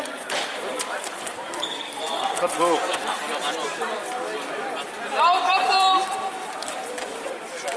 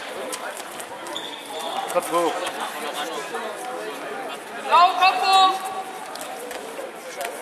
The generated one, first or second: first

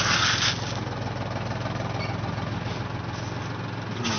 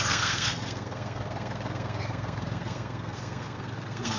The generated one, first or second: second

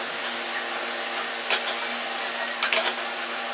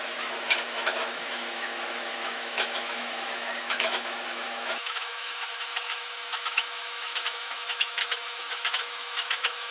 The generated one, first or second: second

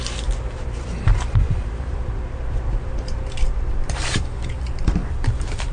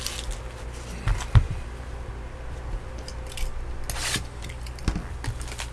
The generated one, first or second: first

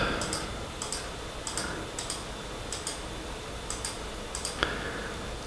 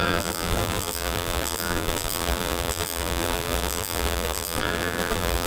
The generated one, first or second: second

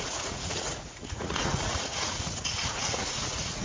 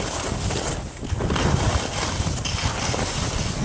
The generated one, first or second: first